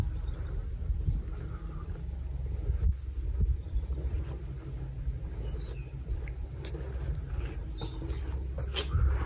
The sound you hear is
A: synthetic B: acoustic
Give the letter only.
B